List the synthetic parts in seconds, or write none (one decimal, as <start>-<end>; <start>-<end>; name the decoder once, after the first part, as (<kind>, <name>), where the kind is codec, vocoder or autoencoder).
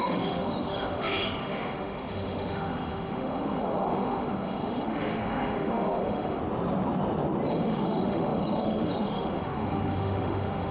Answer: 0.0-6.4 (autoencoder, DAC-VAE); 7.5-10.7